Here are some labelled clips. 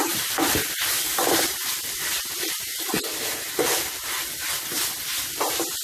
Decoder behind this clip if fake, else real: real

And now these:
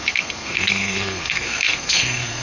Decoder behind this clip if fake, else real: fake, codec, SNAC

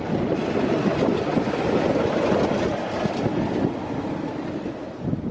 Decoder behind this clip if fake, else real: real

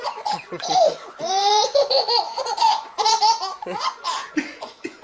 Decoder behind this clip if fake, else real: fake, vocoder, Vocos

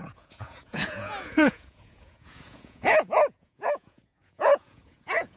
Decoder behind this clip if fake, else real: fake, vocoder, Vocos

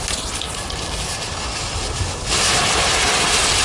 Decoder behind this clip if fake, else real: real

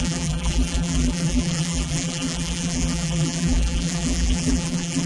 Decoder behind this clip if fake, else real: fake, vocoder, BigVGAN v2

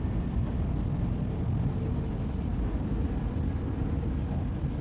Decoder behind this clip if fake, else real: real